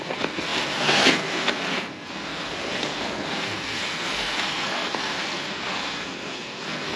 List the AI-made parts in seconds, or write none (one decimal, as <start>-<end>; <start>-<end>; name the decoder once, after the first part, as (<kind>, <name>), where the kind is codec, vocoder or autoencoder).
0.0-7.0 (codec, SNAC)